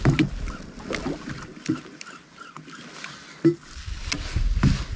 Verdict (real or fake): real